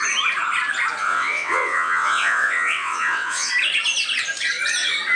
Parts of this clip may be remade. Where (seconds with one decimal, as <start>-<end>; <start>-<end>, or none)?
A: 1.0-3.5